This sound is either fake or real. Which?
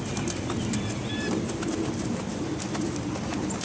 real